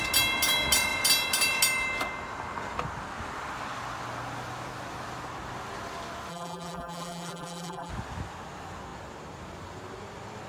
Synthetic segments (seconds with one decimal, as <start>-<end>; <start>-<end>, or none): 6.3-7.9